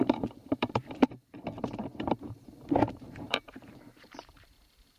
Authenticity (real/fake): fake